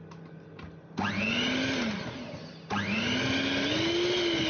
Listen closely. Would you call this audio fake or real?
real